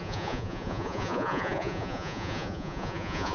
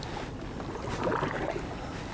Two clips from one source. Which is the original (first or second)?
second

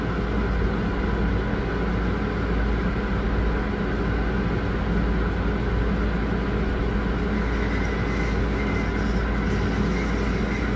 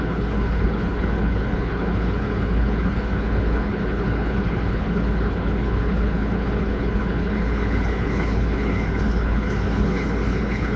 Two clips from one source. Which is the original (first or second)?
first